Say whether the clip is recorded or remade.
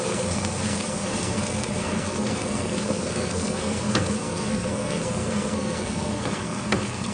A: remade